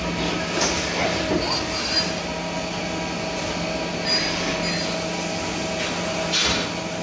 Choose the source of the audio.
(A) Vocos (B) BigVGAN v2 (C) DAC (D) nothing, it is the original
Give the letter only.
D